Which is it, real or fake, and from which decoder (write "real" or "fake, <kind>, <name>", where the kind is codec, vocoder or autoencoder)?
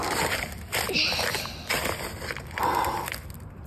real